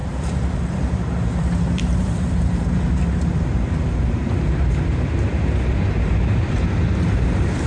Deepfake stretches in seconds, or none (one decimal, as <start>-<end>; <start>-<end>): 0.0-7.7